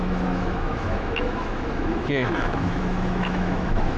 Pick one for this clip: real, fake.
fake